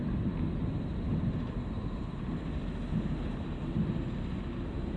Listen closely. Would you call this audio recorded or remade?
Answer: recorded